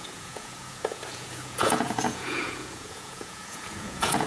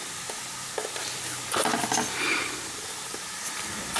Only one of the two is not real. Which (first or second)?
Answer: first